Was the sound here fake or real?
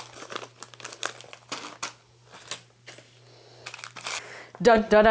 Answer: real